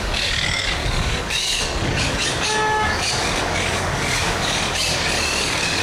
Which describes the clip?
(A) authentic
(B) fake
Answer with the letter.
B